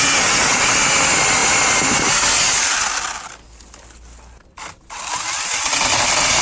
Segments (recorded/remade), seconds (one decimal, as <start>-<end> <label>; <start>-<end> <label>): 0.0-6.4 recorded